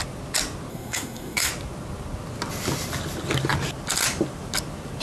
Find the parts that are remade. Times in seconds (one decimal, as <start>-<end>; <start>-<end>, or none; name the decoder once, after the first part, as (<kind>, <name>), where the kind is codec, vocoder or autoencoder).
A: 0.7-1.5 (codec, SNAC)